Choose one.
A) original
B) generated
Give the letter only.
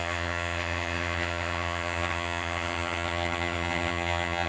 B